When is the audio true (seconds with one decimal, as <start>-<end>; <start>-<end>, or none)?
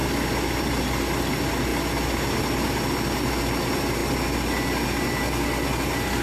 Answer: 0.0-6.2